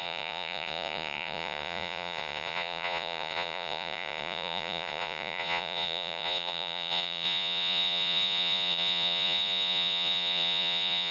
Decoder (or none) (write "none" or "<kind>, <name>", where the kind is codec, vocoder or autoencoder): vocoder, Vocos